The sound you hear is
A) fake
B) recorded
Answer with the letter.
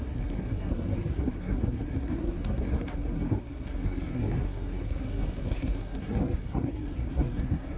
A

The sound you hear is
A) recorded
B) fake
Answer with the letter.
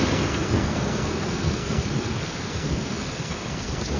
B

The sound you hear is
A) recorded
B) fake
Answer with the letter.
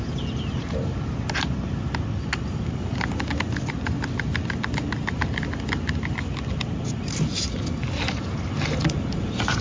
A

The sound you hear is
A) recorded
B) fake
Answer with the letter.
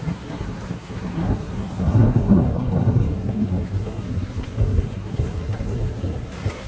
B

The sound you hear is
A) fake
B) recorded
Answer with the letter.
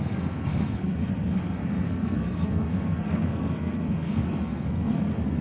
A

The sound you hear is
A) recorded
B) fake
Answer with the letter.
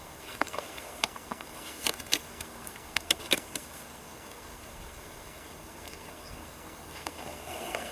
B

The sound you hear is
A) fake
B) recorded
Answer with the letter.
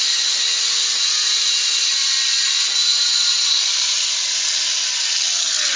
B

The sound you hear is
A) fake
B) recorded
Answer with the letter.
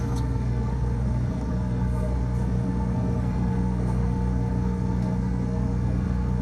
A